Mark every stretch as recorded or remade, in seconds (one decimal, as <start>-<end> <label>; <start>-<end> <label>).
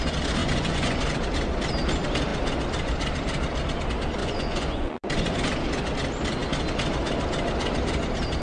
0.0-0.4 recorded; 0.4-1.0 remade; 1.0-4.2 recorded; 4.2-5.0 remade; 5.0-8.4 recorded